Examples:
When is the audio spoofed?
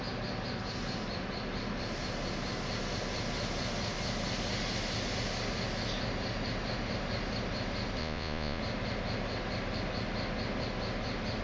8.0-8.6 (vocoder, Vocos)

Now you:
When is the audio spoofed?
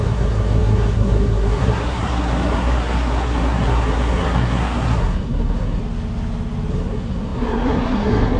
0.0-5.8 (codec, SNAC); 6.7-8.4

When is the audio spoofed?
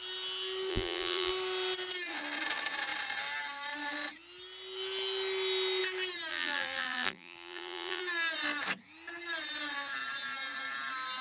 0.7-1.3 (vocoder, BigVGAN v2); 6.3-8.0